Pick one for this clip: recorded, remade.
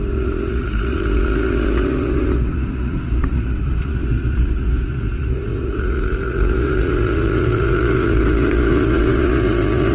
remade